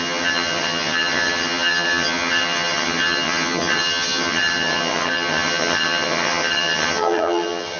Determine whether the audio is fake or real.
fake